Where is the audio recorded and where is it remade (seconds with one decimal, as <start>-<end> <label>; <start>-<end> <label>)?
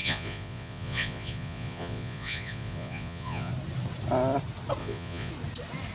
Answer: 0.0-3.5 remade; 3.5-4.8 recorded; 4.8-5.3 remade; 5.3-5.9 recorded